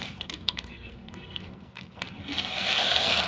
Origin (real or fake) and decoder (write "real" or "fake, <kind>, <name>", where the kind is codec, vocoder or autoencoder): fake, codec, SNAC